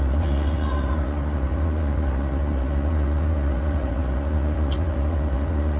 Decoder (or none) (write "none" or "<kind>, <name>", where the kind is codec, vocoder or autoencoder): vocoder, Vocos